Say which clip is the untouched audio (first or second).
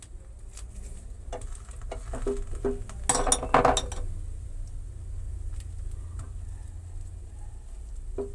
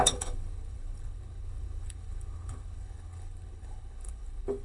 first